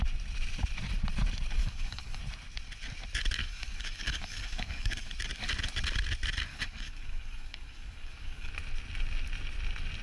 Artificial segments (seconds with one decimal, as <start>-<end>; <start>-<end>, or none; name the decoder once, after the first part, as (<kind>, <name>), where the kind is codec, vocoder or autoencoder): 1.6-2.2 (codec, DAC); 3.4-5.1; 6.5-8.5